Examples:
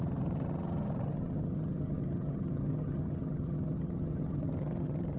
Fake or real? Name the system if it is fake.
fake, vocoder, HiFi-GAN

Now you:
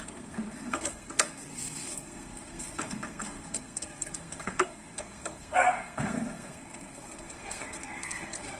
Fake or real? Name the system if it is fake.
fake, codec, SNAC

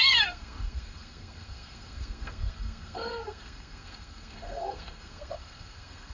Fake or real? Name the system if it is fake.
fake, codec, SNAC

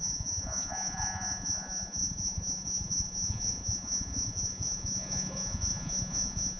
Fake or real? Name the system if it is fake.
fake, vocoder, Vocos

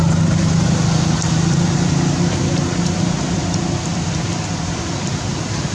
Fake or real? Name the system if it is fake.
real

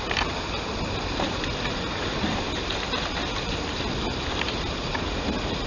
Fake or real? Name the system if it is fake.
real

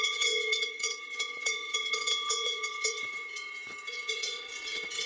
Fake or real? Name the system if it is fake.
fake, vocoder, WaveNeXt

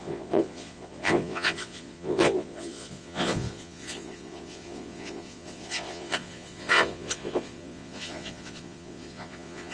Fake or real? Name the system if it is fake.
fake, vocoder, Vocos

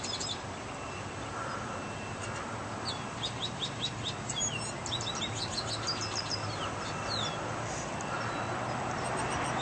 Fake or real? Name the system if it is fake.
real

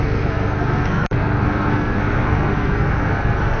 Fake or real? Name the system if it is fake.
fake, codec, SNAC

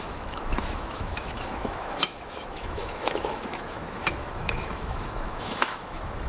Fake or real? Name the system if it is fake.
fake, autoencoder, DAC-VAE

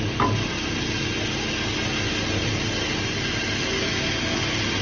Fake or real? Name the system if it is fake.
real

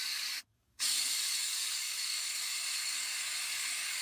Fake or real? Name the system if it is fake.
fake, codec, DAC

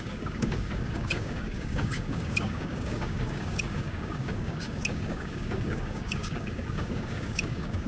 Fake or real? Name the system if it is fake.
fake, codec, DAC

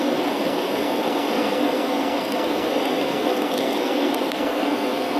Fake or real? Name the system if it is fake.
fake, codec, SNAC